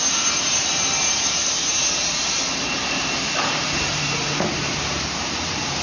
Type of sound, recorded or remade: remade